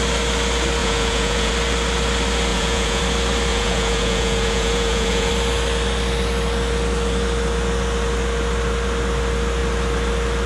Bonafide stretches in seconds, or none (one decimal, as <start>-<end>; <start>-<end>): 0.0-0.8; 1.5-2.5; 3.0-3.5; 5.3-10.5